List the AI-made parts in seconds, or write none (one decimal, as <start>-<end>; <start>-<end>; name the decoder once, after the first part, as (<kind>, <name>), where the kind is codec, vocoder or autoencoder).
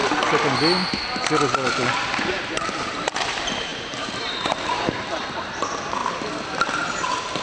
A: 1.7-6.0 (vocoder, BigVGAN v2); 7.0-7.4